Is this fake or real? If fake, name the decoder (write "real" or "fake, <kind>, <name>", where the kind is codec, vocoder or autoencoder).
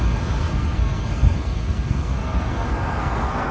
fake, codec, SNAC